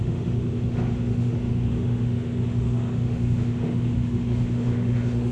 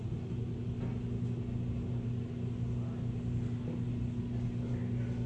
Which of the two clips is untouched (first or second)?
second